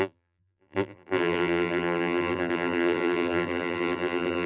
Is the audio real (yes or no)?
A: no